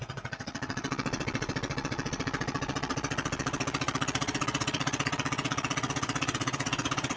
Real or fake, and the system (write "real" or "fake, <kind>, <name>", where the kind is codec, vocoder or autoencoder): fake, vocoder, WaveNeXt